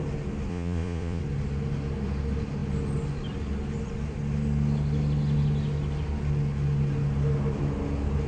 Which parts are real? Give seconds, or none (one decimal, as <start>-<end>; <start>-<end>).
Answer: 0.0-0.5; 1.2-8.3